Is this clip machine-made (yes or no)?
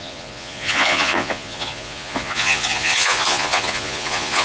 yes